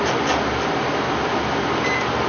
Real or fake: real